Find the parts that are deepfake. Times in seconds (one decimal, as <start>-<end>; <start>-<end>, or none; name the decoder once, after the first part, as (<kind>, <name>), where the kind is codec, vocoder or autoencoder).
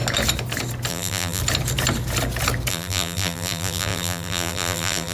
0.9-1.4 (vocoder, BigVGAN v2); 2.7-5.1